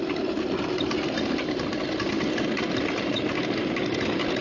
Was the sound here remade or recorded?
recorded